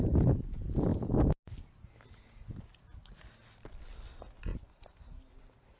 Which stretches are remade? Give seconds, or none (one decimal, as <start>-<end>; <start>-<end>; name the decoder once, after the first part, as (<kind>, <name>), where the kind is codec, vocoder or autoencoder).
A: none